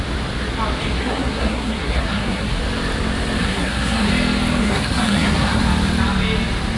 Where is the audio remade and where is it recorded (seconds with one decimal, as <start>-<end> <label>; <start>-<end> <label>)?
0.0-1.0 recorded; 1.0-2.6 remade; 2.6-3.4 recorded; 3.4-4.1 remade; 4.1-4.6 recorded; 4.6-5.6 remade; 5.6-6.8 recorded